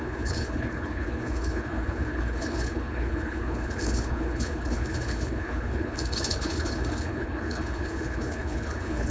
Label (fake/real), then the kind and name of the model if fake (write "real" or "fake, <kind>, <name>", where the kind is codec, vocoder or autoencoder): fake, codec, HILCodec